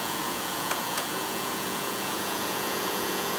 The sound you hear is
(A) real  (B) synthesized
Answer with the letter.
B